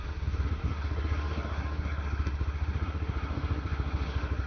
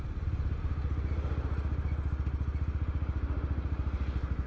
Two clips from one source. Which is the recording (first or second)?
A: second